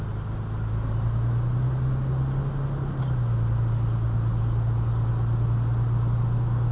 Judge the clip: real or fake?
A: real